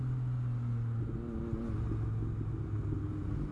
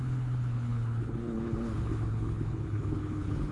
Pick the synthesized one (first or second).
second